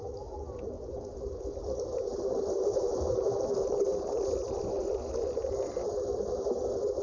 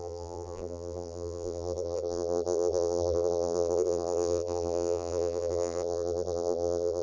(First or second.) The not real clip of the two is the second